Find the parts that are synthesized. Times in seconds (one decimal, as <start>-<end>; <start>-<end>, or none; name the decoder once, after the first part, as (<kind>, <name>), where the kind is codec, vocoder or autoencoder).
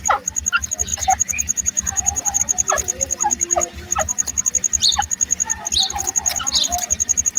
0.9-2.4 (vocoder, BigVGAN v2)